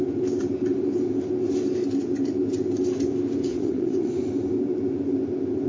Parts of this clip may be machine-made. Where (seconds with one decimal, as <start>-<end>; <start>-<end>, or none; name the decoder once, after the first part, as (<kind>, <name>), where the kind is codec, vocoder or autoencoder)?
3.5-4.1 (vocoder, WaveNeXt)